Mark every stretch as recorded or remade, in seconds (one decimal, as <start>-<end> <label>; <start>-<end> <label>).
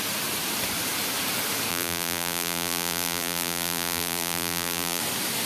0.0-1.7 recorded; 1.7-5.0 remade; 5.0-5.5 recorded